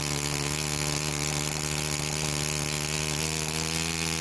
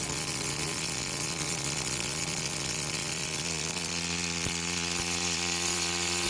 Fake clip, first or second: second